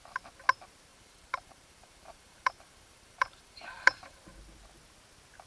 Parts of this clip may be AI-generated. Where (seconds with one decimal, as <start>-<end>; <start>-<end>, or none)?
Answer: 0.9-4.2